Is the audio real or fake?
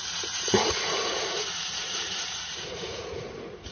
fake